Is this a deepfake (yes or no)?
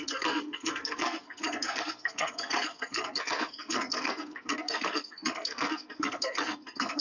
yes